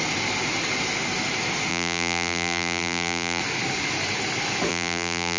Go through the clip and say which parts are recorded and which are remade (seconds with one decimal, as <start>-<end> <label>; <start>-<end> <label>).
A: 0.0-1.7 recorded; 1.7-3.4 remade; 3.4-4.7 recorded; 4.7-5.4 remade